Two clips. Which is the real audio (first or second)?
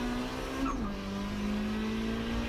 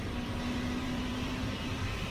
first